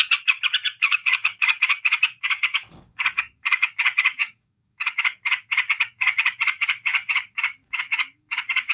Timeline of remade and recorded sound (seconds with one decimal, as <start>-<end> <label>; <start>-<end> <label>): 0.0-8.7 remade